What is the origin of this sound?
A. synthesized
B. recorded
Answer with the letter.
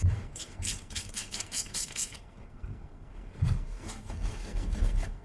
A